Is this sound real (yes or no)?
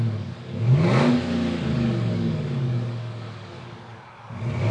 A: no